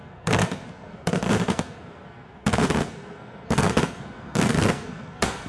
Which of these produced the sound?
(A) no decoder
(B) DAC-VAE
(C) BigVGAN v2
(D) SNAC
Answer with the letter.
D